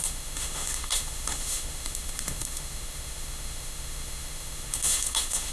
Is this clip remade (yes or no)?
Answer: yes